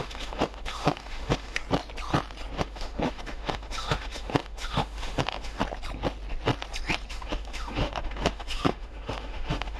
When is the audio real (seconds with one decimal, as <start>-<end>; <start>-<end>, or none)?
1.6-2.6; 5.6-7.1